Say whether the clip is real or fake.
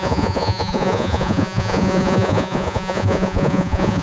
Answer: fake